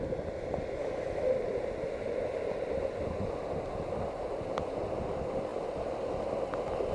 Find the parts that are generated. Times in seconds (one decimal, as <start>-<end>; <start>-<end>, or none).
0.8-1.3